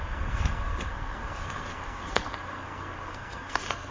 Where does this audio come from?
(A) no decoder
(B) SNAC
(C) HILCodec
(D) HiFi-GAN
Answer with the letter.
B